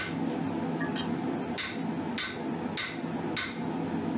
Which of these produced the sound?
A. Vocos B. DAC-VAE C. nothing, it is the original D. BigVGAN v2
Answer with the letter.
C